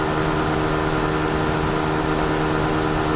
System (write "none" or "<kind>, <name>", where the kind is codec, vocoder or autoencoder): none